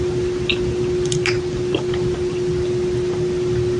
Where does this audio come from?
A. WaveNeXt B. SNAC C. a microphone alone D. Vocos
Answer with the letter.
C